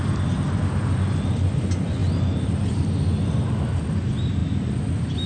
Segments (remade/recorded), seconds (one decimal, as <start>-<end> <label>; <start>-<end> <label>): 0.0-5.3 recorded